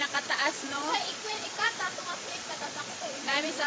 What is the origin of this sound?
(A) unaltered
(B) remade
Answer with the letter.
B